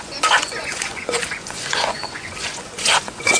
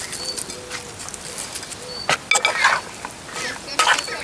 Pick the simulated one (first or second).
first